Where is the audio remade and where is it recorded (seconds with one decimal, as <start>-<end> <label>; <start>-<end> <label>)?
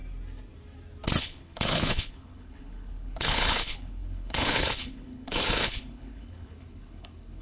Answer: 0.0-1.2 recorded; 1.2-7.4 remade